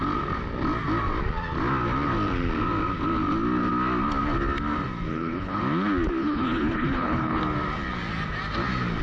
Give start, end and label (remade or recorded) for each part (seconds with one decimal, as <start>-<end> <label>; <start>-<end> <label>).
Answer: 0.0-5.1 recorded; 5.1-5.6 remade; 5.6-6.2 recorded; 6.2-7.4 remade; 7.4-9.0 recorded